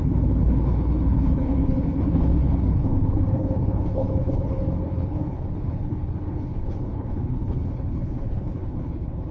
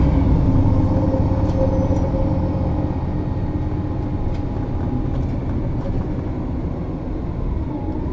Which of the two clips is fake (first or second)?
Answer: first